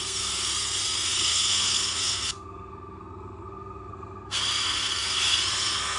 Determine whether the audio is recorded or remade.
remade